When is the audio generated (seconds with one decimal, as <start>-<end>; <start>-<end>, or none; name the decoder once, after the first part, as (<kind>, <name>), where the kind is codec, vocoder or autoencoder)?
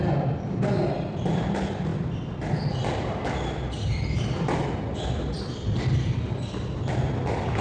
none